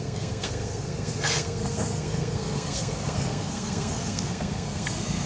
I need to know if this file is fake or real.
fake